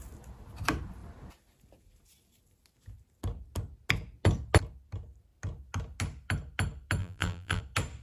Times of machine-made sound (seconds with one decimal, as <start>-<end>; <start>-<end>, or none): 7.0-7.6